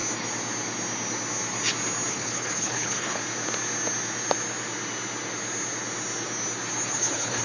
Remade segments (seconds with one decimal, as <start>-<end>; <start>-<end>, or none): 2.1-3.2; 6.9-7.4